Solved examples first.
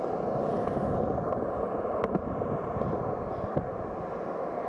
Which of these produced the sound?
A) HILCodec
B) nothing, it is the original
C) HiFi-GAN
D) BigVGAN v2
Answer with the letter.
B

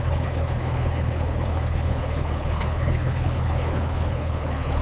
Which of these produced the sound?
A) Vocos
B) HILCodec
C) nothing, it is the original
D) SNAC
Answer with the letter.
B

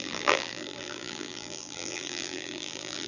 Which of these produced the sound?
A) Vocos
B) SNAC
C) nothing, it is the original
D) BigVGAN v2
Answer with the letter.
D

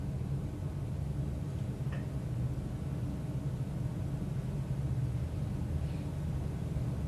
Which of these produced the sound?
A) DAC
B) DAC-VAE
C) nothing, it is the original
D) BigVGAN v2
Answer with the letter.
C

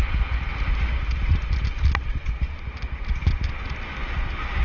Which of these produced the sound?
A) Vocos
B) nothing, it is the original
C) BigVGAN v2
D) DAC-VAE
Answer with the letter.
B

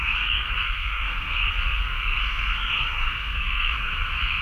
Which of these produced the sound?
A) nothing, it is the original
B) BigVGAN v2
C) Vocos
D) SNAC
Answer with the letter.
D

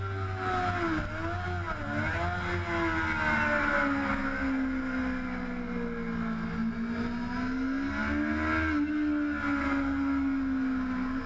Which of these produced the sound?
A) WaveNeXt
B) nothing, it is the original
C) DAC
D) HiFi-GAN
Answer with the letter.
B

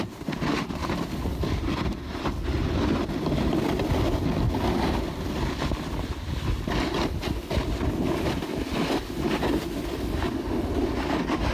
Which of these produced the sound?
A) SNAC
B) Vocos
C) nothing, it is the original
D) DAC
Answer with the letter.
C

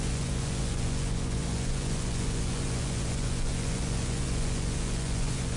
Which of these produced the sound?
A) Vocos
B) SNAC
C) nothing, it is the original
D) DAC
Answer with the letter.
A